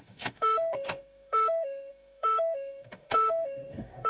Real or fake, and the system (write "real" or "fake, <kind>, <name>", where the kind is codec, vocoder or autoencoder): fake, autoencoder, DAC-VAE